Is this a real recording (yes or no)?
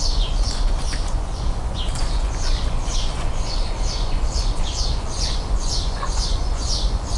no